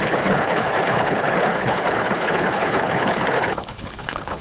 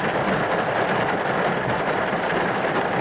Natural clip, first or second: second